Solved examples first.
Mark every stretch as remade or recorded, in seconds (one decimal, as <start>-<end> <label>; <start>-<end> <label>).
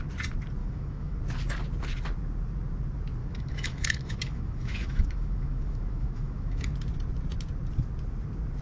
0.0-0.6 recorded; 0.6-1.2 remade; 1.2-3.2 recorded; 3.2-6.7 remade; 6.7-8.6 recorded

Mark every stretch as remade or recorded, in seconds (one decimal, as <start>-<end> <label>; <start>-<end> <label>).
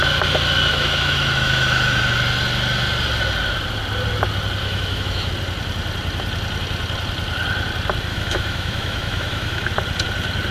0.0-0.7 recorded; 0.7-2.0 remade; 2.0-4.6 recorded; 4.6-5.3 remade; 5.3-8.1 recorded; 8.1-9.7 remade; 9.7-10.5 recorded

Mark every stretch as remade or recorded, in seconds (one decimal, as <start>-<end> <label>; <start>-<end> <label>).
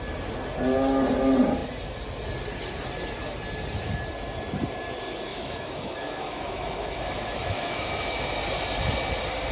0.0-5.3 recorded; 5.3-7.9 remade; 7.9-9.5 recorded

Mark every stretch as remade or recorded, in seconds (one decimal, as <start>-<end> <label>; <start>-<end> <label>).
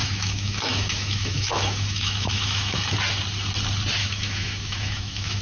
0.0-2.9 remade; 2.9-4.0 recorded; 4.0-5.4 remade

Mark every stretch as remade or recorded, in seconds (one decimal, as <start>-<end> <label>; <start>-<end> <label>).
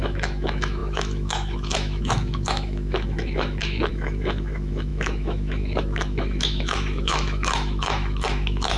0.0-8.8 remade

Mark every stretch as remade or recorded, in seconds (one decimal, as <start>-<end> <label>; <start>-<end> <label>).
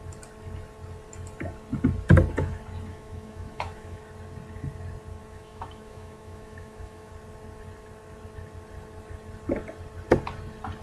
0.0-2.9 recorded; 2.9-4.0 remade; 4.0-5.2 recorded; 5.2-7.1 remade; 7.1-10.8 recorded